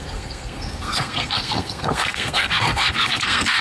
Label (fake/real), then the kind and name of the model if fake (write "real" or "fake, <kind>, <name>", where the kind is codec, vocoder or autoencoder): fake, codec, SNAC